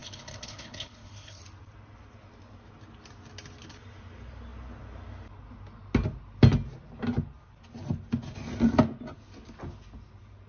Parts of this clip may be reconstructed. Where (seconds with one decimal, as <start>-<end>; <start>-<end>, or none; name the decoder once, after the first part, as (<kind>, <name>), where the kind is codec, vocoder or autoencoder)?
0.0-1.4 (codec, HILCodec)